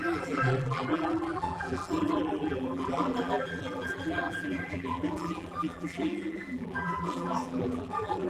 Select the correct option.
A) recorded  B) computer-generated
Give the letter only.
B